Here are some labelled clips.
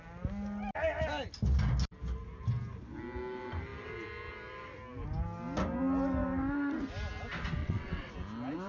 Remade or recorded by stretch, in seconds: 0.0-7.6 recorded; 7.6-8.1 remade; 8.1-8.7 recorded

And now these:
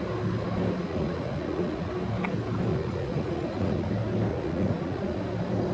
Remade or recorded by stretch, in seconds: 0.0-0.8 recorded; 0.8-1.9 remade; 1.9-2.7 recorded; 2.7-3.9 remade; 3.9-4.3 recorded; 4.3-5.2 remade; 5.2-5.7 recorded

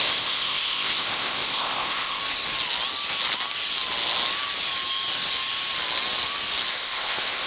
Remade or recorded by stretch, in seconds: 0.0-2.2 remade; 2.2-6.7 recorded; 6.7-7.5 remade

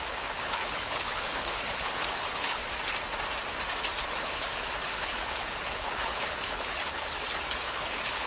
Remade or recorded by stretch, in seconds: 0.0-2.6 remade; 2.6-4.0 recorded; 4.0-8.3 remade

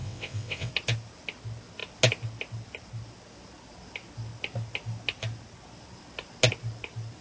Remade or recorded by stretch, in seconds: 0.0-0.7 remade; 0.7-7.2 recorded

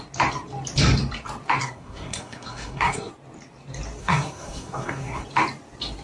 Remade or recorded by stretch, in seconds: 0.0-1.6 recorded; 1.6-3.1 remade; 3.1-4.0 recorded; 4.0-5.2 remade; 5.2-6.0 recorded

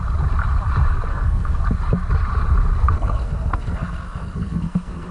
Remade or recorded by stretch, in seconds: 0.0-1.1 recorded; 1.1-1.6 remade; 1.6-2.8 recorded; 2.8-5.1 remade